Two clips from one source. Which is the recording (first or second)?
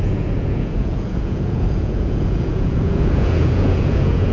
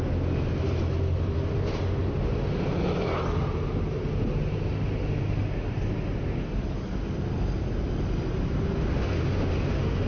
second